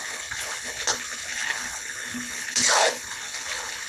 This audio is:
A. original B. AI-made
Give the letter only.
B